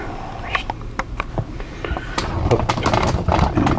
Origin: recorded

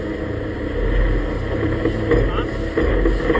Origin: recorded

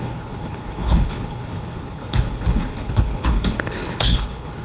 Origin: remade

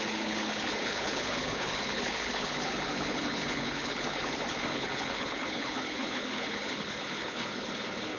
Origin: remade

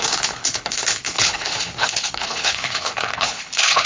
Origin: remade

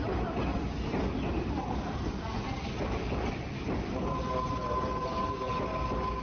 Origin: recorded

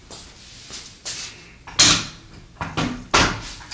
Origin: recorded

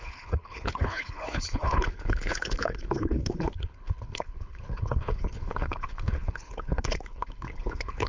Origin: remade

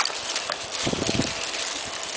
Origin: recorded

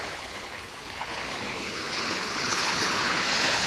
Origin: remade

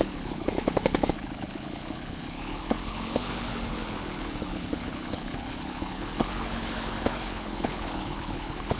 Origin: remade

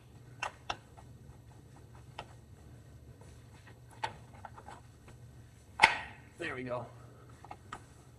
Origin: remade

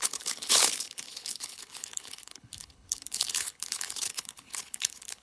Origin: remade